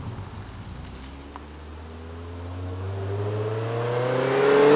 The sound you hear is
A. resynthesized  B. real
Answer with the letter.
B